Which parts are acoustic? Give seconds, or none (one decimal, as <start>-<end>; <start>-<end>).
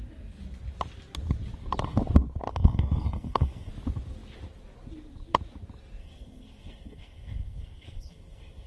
0.0-2.5; 3.7-6.0